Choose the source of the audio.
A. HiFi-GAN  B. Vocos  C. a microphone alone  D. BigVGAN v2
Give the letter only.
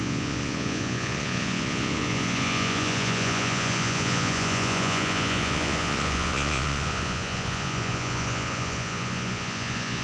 B